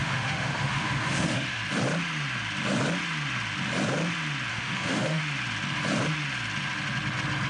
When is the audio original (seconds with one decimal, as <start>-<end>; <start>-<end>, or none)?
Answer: 1.6-4.5; 5.2-7.5